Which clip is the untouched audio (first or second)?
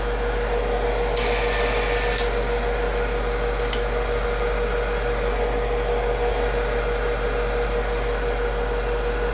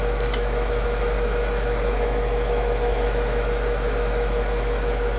first